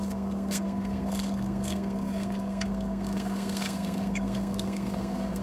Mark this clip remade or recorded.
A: remade